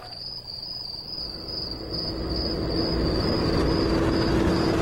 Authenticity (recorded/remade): recorded